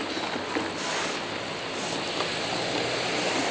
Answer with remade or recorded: recorded